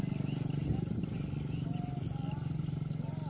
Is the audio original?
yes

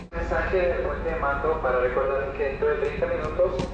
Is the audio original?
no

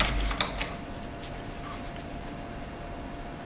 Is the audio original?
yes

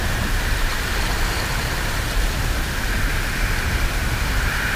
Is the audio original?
yes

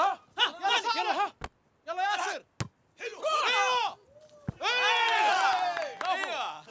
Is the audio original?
yes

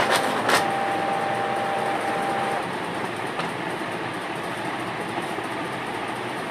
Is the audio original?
no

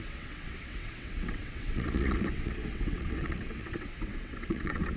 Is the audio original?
no